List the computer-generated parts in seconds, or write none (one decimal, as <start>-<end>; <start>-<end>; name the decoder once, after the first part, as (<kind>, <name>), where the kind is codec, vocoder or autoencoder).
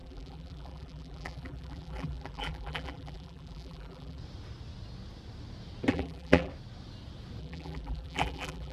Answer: 0.0-4.2 (vocoder, BigVGAN v2); 5.9-6.5; 7.4-8.7